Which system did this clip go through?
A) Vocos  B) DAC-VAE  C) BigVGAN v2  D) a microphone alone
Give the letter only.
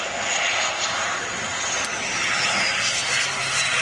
D